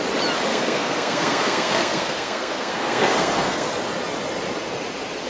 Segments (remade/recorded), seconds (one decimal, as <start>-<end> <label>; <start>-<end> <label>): 0.0-0.5 recorded; 0.5-3.7 remade; 3.7-5.3 recorded